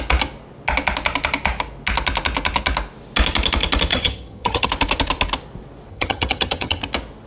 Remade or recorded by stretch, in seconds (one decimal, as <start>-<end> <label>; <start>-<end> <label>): 0.0-3.9 recorded; 3.9-4.7 remade; 4.7-5.9 recorded; 5.9-6.8 remade; 6.8-7.3 recorded